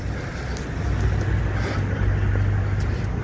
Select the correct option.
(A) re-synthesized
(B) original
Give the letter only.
B